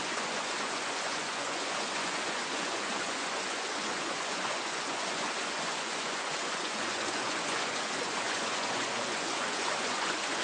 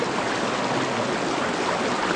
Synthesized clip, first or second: first